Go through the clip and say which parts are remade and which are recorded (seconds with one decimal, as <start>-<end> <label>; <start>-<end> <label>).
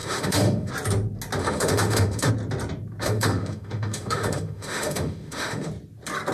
0.0-0.7 remade; 0.7-1.4 recorded; 1.4-2.3 remade; 2.3-3.0 recorded; 3.0-5.7 remade; 5.7-6.3 recorded